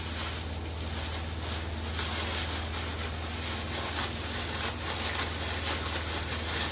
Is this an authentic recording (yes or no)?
yes